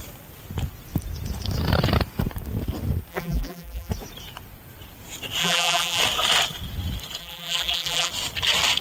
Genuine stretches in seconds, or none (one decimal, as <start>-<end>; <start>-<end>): 0.0-3.1; 3.9-5.4; 6.0-7.2; 8.1-8.8

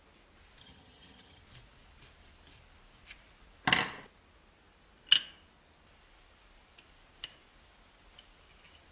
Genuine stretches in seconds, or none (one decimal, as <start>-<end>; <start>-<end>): 0.0-0.6; 1.4-8.9

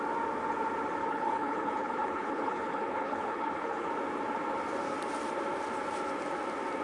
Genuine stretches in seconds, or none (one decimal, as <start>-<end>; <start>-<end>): 0.0-1.0; 3.9-6.8